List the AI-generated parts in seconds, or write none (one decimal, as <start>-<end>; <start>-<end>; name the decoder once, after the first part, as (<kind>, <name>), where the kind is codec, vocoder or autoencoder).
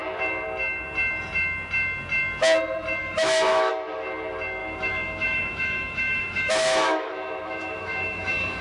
3.0-3.7 (autoencoder, DAC-VAE); 4.6-8.6